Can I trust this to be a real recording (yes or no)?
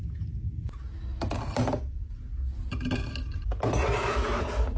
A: yes